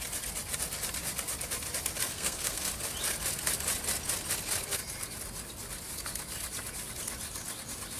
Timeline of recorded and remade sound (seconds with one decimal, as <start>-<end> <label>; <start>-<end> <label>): 0.0-2.1 recorded; 2.1-2.7 remade; 2.7-8.0 recorded